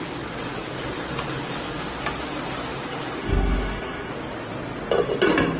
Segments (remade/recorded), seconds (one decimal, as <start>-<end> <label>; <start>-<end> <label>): 0.0-3.2 recorded; 3.2-4.1 remade; 4.1-5.6 recorded